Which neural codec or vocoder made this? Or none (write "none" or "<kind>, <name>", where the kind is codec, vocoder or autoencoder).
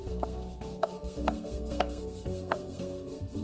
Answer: codec, SNAC